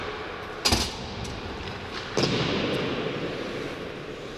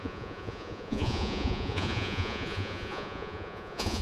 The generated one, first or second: second